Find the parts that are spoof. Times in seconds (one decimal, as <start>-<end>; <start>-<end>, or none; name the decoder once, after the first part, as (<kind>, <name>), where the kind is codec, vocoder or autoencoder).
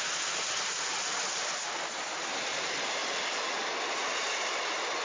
none